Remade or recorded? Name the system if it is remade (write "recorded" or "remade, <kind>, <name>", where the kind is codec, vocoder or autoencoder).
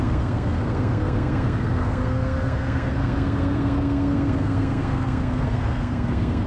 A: remade, codec, SNAC